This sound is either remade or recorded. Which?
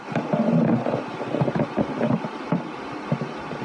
recorded